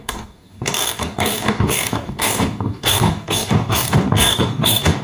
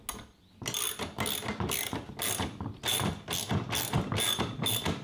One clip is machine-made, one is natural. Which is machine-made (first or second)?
first